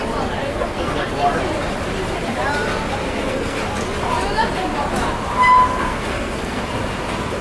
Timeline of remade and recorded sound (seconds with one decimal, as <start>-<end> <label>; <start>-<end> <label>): 0.0-0.4 recorded; 0.4-1.1 remade; 1.1-3.0 recorded; 3.0-3.6 remade; 3.6-5.8 recorded; 5.8-6.6 remade; 6.6-7.4 recorded